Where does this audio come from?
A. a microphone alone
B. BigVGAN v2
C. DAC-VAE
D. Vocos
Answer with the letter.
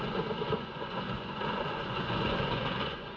D